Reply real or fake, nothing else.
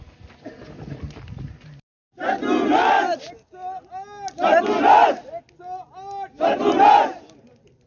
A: real